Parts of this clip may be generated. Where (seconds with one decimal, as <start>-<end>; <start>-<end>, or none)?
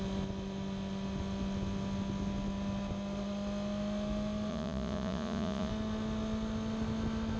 4.5-5.7